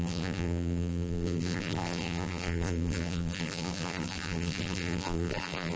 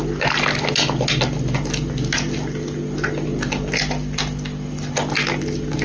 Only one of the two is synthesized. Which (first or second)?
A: first